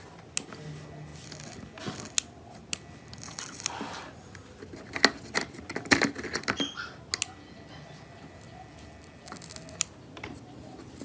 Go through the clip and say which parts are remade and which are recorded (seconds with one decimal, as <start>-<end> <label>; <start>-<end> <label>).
0.0-11.0 recorded

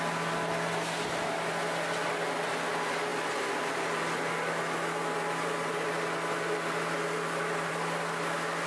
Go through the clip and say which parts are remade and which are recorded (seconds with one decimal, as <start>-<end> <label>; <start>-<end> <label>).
0.0-8.7 recorded

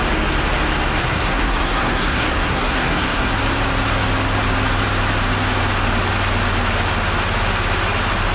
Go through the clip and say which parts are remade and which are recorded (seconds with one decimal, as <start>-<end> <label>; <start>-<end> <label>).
0.0-1.0 recorded; 1.0-3.3 remade; 3.3-8.3 recorded

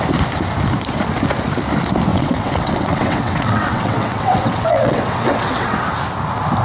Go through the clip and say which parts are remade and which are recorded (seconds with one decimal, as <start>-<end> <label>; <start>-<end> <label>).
0.0-2.1 recorded; 2.1-5.7 remade; 5.7-6.6 recorded

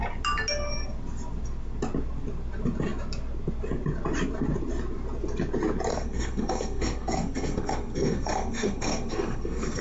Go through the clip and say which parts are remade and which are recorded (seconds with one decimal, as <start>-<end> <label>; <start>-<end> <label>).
0.0-5.9 recorded; 5.9-9.8 remade